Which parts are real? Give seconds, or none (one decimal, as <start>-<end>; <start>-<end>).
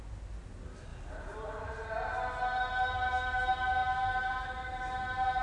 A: 0.0-5.4